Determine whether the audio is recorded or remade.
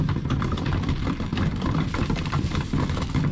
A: remade